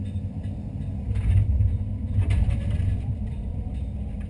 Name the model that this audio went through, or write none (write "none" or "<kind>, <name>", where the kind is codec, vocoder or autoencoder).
vocoder, BigVGAN v2